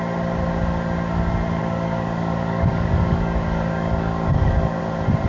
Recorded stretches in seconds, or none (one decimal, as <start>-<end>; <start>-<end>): 0.0-1.6; 4.8-5.3

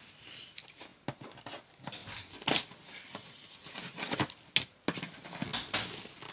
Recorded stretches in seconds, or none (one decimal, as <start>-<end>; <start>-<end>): 0.0-6.3

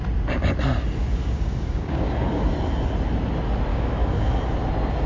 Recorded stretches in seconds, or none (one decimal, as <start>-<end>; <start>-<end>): 0.0-1.0; 2.4-3.7; 4.3-5.1

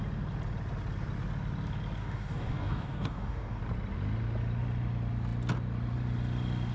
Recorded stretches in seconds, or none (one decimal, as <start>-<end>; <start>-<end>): 0.0-2.0; 3.6-6.7

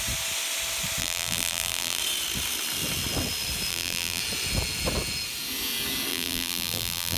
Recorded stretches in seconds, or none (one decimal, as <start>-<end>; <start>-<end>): 0.0-1.0; 2.0-3.7; 4.2-6.1

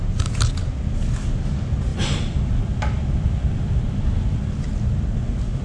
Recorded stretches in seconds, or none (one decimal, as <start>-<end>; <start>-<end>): 0.0-1.9; 4.5-5.6

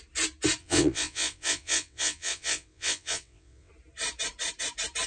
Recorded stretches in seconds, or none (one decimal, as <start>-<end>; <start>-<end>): 0.0-0.6; 3.7-5.1

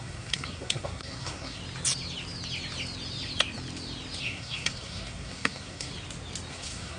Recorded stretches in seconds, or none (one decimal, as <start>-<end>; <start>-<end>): 1.6-4.2; 5.9-6.5